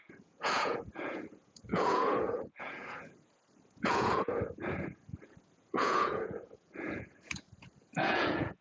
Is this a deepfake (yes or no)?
yes